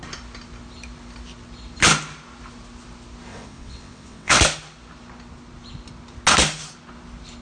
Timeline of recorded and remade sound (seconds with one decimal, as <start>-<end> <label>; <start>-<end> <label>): 0.0-3.3 recorded; 3.3-4.4 remade; 4.4-7.4 recorded